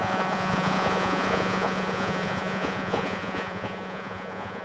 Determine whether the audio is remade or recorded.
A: remade